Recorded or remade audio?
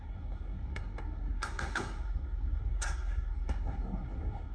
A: remade